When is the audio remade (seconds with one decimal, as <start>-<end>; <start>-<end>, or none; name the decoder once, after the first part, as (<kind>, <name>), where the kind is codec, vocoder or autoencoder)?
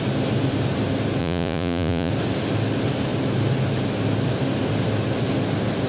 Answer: 1.2-2.1 (vocoder, Vocos)